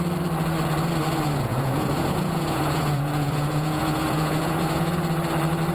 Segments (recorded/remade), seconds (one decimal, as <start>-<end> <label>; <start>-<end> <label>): 0.0-1.5 recorded; 1.5-4.9 remade; 4.9-5.7 recorded